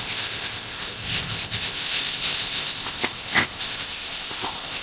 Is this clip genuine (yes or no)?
no